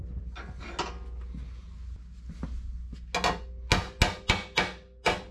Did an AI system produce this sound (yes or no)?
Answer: no